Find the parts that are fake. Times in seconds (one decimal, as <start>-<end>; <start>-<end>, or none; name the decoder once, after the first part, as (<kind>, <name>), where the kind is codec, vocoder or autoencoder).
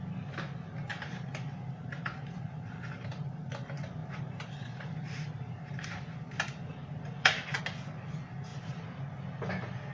0.9-3.4 (vocoder, BigVGAN v2); 4.0-7.6; 8.5-9.0